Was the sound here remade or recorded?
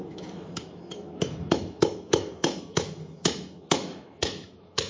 remade